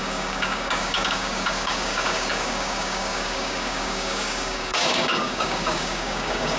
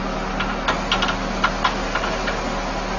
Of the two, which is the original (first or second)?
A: second